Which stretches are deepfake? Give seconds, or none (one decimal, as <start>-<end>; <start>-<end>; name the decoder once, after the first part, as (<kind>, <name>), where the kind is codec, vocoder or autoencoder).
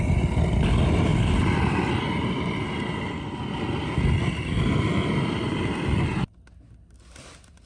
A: 1.1-3.2 (vocoder, BigVGAN v2); 5.0-5.7